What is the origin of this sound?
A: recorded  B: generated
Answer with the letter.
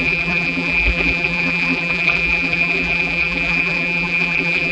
B